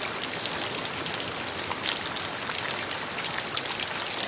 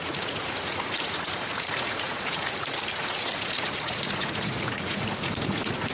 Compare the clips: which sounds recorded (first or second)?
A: first